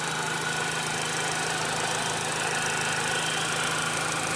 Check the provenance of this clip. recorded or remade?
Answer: recorded